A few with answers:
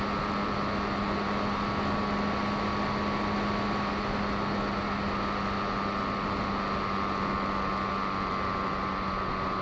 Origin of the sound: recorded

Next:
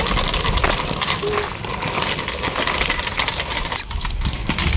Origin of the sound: recorded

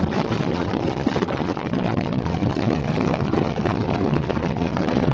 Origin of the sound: remade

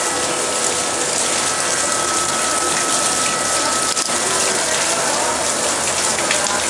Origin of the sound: recorded